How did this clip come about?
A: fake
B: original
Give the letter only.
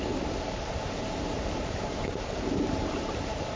A